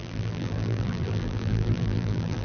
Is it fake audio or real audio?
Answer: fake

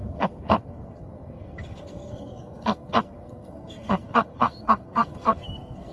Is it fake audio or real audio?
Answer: fake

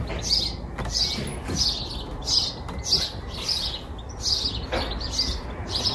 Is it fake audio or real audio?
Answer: real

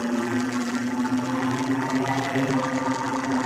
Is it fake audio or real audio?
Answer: fake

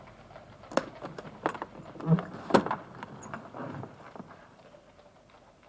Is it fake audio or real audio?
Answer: real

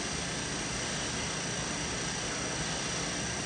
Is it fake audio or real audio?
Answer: real